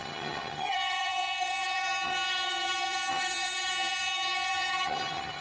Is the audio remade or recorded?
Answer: remade